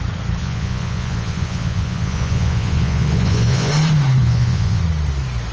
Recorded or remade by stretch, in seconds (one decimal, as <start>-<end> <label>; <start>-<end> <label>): 0.0-0.4 recorded; 0.4-3.7 remade; 3.7-4.2 recorded; 4.2-4.8 remade; 4.8-5.5 recorded